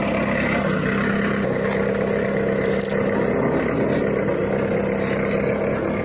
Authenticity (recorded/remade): recorded